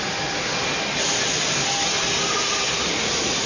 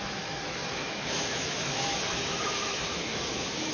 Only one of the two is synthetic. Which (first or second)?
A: second